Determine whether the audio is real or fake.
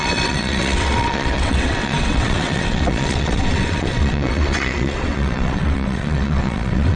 fake